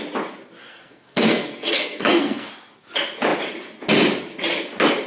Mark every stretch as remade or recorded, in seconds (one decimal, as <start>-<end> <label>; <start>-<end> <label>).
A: 0.0-0.7 recorded; 0.7-2.5 remade; 2.5-5.1 recorded